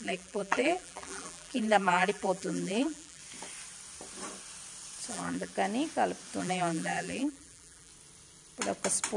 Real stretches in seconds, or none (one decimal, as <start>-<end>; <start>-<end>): 3.2-5.1; 5.5-6.4; 7.9-9.2